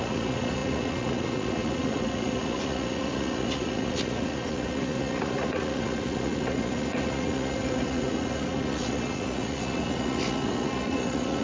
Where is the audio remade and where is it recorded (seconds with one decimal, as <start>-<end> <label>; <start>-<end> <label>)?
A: 0.0-11.4 remade